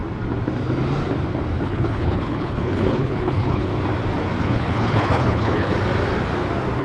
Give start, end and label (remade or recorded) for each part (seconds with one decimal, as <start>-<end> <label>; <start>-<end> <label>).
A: 0.0-1.6 recorded; 1.6-3.7 remade; 3.7-4.4 recorded; 4.4-5.7 remade; 5.7-6.8 recorded